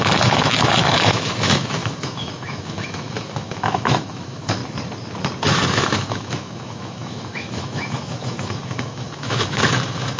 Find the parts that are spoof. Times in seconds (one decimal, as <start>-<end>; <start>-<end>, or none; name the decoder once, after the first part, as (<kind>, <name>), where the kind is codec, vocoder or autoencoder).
0.0-4.6 (autoencoder, DAC-VAE); 5.7-10.2